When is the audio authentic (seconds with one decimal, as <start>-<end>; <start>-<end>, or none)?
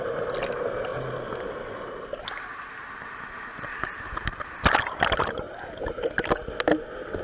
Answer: 0.0-7.2